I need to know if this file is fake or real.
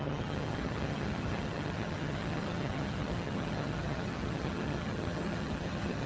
fake